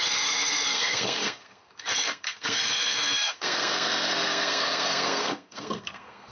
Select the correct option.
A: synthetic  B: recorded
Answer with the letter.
A